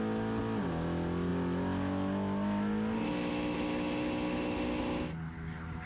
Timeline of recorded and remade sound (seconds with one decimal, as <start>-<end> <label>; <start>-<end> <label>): 0.0-5.9 recorded